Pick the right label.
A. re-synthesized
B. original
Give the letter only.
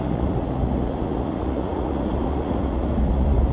A